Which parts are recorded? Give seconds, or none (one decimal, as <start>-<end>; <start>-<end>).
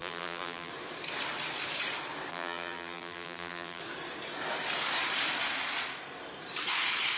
0.7-2.3; 3.8-7.2